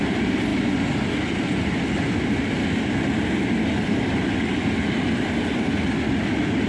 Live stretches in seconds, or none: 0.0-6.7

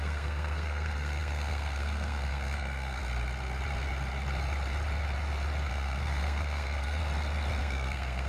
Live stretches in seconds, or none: 3.0-5.7; 7.0-7.6

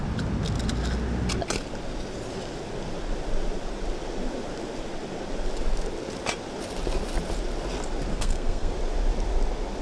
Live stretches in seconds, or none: 0.0-8.1; 8.7-9.8

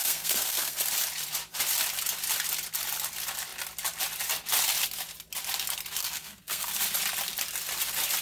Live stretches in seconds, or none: 0.8-6.0; 6.7-8.2